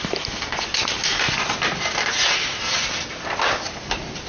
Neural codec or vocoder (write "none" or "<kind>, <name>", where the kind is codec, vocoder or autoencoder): none